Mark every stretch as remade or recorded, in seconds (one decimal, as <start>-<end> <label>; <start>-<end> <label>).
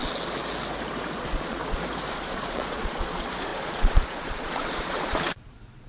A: 0.0-1.2 recorded; 1.2-1.6 remade; 1.6-2.1 recorded; 2.1-5.9 remade